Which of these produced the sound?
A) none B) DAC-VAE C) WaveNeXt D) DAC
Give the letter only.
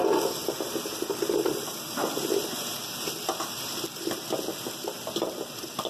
A